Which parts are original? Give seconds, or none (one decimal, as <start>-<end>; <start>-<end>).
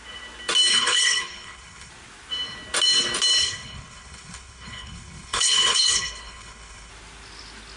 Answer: 0.0-0.7; 1.9-3.4; 6.9-7.8